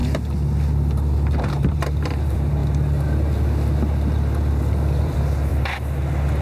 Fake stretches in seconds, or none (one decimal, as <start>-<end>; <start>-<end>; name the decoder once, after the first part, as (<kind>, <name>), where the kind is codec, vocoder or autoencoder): 1.4-2.6 (vocoder, BigVGAN v2); 5.0-5.5

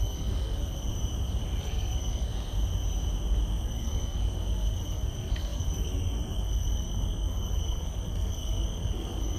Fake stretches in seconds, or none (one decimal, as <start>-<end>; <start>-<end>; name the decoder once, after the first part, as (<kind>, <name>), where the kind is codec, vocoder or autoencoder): 0.0-0.9 (codec, SNAC); 1.6-2.3; 3.5-9.4

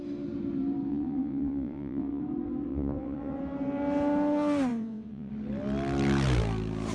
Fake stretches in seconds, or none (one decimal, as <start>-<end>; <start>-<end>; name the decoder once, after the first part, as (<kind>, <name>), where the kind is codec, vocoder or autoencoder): 0.9-2.2 (vocoder, WaveNeXt); 2.7-3.4; 4.7-5.3